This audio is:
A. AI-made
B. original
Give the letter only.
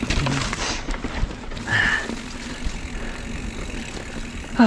B